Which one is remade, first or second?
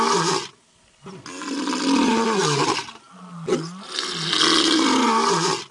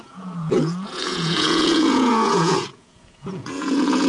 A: second